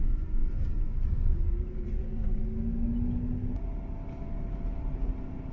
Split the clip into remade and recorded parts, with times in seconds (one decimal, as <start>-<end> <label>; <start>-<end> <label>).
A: 0.0-0.4 recorded; 0.4-2.4 remade; 2.4-5.5 recorded